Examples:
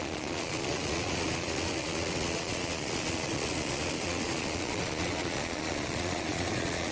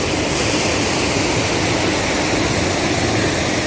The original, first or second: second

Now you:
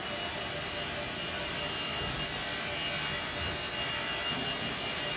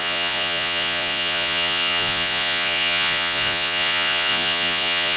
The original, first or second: first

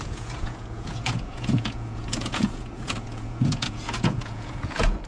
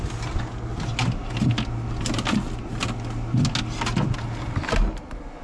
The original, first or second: second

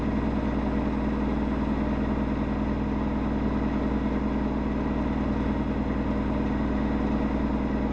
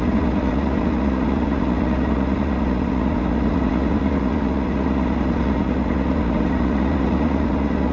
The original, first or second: first